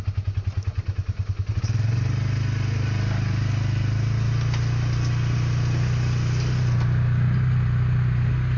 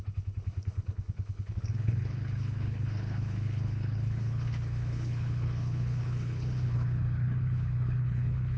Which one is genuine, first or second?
first